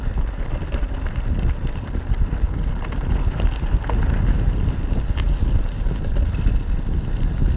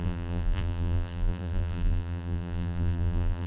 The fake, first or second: second